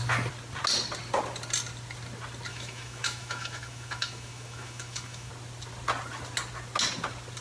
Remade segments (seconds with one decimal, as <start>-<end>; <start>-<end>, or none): 2.5-5.3

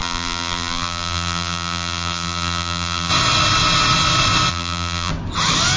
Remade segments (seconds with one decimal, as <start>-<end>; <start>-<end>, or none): 0.0-3.1; 4.5-5.1

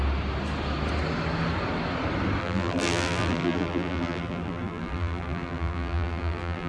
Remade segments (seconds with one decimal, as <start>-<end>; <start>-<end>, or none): 2.4-6.7

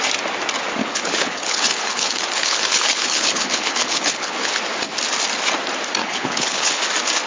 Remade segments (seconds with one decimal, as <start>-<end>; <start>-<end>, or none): 0.8-4.5; 6.0-6.8